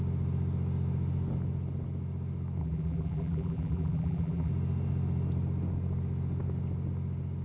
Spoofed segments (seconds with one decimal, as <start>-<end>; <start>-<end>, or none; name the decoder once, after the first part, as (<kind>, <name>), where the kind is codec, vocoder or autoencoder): 2.6-4.5 (vocoder, BigVGAN v2)